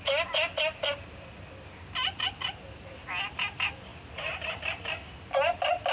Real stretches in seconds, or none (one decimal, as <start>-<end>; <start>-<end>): 0.0-5.9